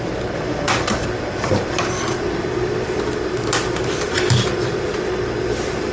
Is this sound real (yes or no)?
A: yes